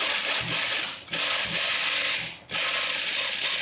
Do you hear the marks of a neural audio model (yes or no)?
no